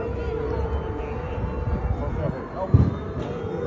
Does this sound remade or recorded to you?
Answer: recorded